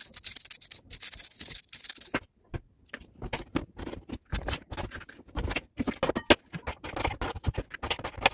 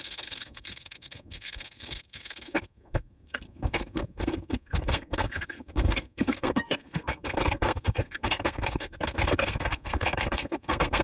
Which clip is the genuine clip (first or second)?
first